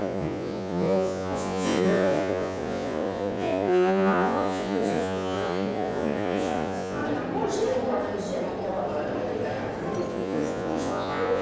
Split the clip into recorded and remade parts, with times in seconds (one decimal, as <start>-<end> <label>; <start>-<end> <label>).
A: 0.0-7.0 remade; 7.0-10.1 recorded; 10.1-11.4 remade